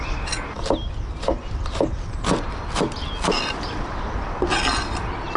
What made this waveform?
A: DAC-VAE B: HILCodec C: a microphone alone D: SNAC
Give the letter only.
C